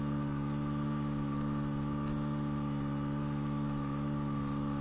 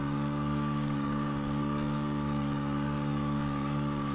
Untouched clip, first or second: first